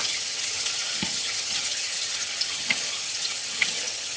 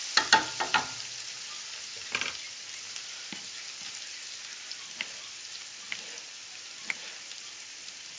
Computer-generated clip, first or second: first